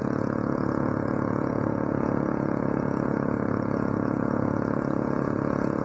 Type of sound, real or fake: fake